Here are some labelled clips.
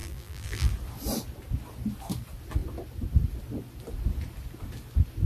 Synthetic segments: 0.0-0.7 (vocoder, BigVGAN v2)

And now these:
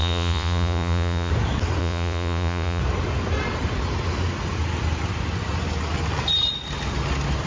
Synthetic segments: 0.0-1.3 (vocoder, Vocos); 1.8-2.8

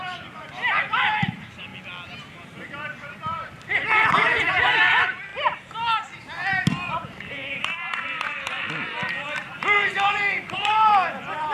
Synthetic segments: 0.0-1.7 (vocoder, BigVGAN v2); 2.2-5.3; 8.7-11.5

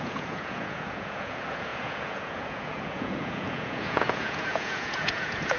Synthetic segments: 0.0-5.6 (vocoder, Vocos)

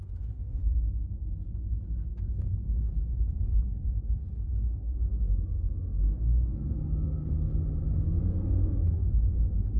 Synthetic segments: 0.0-0.6 (codec, SNAC); 4.8-7.5; 8.2-9.8

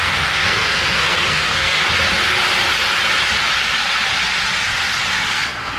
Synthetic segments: 0.0-1.8 (codec, SNAC); 5.3-5.8

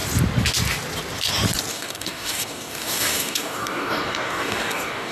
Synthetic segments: 1.7-5.1 (codec, DAC)

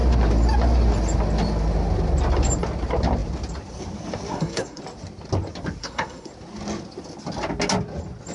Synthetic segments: 4.3-4.8 (codec, SNAC); 5.8-6.3